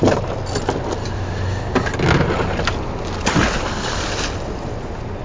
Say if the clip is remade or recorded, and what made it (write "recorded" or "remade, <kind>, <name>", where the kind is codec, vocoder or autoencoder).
recorded